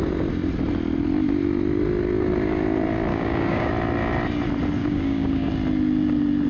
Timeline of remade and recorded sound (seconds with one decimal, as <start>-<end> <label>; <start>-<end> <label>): 0.0-3.1 recorded; 3.1-3.7 remade; 3.7-4.8 recorded; 4.8-5.5 remade; 5.5-6.5 recorded